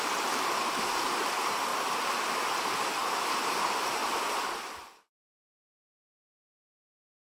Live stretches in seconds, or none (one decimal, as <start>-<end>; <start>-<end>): 1.7-2.6; 3.0-3.5; 4.0-6.5